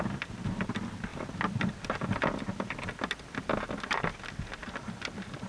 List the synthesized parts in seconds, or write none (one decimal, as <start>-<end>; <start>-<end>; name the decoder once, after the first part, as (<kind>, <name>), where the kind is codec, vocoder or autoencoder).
none